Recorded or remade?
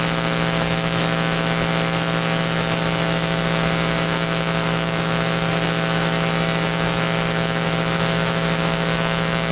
remade